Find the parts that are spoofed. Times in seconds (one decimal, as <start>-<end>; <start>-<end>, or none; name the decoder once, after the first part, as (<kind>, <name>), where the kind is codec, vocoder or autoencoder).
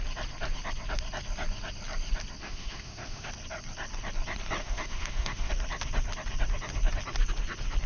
2.4-3.3 (autoencoder, DAC-VAE); 4.6-5.5